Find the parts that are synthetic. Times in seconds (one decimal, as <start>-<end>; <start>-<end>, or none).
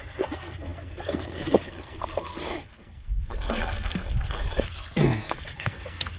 0.0-6.2